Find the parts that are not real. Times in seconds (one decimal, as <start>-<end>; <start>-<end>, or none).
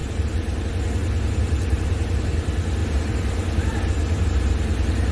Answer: 0.0-0.6; 2.8-3.9